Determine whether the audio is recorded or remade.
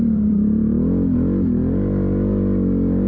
remade